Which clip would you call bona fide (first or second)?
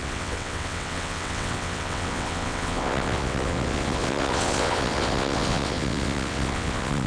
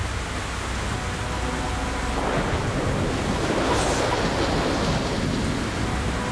second